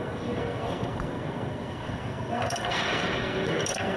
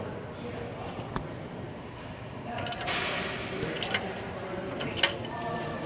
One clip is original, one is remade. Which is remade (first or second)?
first